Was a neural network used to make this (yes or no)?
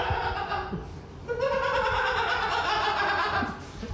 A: no